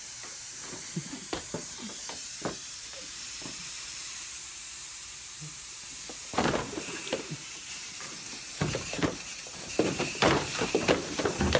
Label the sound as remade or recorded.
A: remade